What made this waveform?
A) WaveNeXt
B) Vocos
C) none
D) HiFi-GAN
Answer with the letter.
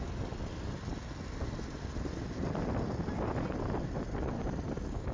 C